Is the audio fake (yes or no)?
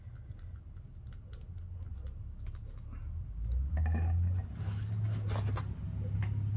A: no